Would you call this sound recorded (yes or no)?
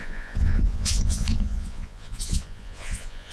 no